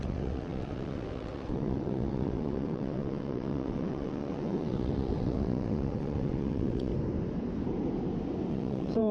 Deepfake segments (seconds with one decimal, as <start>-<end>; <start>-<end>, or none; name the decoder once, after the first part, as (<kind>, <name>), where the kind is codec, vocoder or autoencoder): 0.0-6.9 (vocoder, WaveNeXt); 8.5-9.1